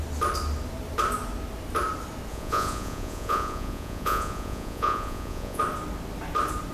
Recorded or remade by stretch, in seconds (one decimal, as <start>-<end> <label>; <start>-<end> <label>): 0.0-2.3 recorded; 2.3-5.6 remade; 5.6-6.7 recorded